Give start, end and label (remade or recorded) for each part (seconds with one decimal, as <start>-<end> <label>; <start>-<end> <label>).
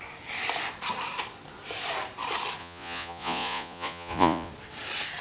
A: 0.0-2.6 recorded; 2.6-4.5 remade; 4.5-5.2 recorded